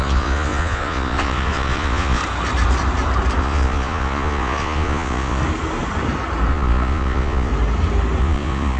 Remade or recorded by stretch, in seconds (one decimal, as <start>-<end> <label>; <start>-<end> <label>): 0.0-2.2 remade; 2.2-3.4 recorded; 3.4-5.4 remade; 5.4-6.5 recorded; 6.5-7.5 remade; 7.5-8.2 recorded; 8.2-8.8 remade